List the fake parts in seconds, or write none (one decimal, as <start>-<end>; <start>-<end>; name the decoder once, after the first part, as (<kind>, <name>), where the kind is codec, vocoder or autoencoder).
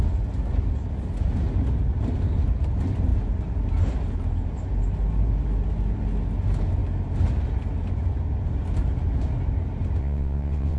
10.0-10.8 (vocoder, WaveNeXt)